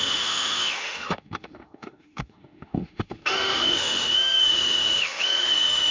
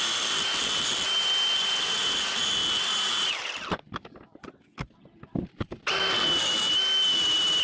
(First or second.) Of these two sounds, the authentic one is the second